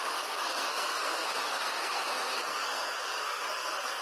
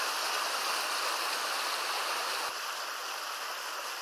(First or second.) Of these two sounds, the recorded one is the second